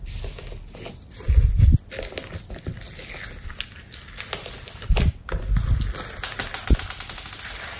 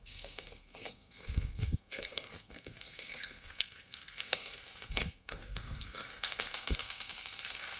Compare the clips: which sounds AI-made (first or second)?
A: second